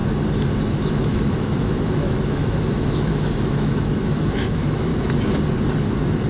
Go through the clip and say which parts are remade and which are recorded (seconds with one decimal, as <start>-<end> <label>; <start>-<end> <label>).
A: 0.0-0.9 recorded; 0.9-4.9 remade; 4.9-6.3 recorded